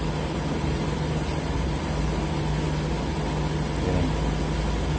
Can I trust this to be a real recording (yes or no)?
yes